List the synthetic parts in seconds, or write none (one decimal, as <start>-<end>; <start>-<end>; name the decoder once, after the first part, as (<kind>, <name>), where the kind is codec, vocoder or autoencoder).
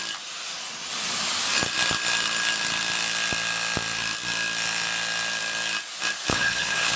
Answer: 6.3-7.0 (codec, HILCodec)